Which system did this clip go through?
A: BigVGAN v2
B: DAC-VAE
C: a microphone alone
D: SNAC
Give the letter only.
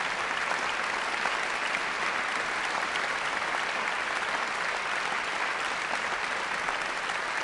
C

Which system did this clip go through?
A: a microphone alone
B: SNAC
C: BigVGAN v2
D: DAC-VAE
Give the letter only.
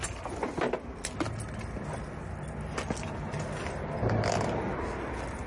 A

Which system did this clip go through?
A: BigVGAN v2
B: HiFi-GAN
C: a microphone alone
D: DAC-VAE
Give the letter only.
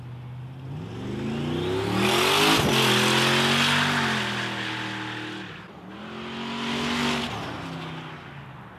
C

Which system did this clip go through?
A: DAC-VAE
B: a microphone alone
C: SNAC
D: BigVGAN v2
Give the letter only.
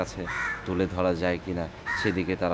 A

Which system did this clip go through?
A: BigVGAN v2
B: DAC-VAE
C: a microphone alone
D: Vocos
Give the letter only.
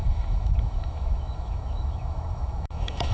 B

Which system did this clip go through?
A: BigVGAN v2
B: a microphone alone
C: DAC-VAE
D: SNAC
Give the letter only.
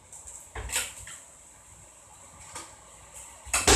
B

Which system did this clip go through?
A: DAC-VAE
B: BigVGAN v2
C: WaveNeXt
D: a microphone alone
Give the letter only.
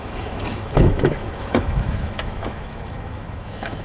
A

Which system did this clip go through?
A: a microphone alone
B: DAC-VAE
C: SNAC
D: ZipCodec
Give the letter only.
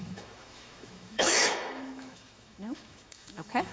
B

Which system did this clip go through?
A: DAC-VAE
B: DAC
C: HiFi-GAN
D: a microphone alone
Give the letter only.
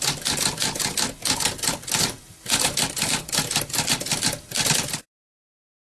D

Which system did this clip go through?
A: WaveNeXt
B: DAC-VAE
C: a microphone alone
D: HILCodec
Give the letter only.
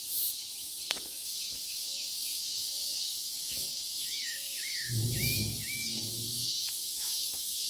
B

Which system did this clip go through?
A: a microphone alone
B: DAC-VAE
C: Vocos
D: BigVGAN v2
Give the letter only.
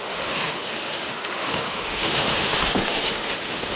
B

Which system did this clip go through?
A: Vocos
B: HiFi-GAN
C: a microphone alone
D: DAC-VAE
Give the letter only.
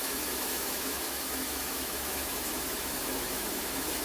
D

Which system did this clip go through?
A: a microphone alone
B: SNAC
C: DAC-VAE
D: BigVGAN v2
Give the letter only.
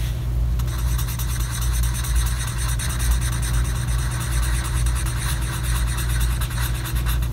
A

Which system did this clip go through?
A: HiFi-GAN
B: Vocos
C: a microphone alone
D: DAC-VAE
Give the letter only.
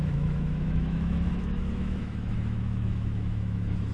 D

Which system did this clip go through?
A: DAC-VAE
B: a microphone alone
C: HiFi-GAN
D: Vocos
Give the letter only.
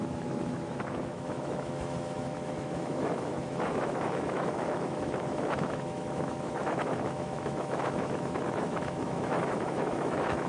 A